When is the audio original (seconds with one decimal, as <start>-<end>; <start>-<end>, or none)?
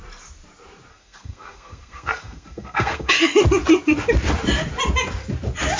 0.0-0.9; 3.1-5.8